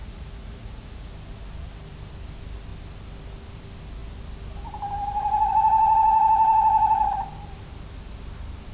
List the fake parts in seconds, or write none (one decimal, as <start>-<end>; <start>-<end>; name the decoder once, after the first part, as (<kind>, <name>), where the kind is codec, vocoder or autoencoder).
0.0-1.1 (vocoder, Vocos)